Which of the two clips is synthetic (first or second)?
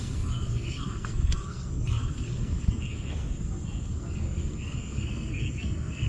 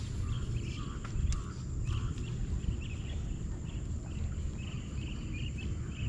first